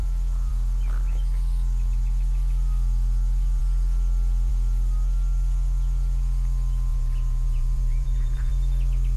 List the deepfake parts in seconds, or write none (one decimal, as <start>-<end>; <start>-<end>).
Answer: 6.9-8.5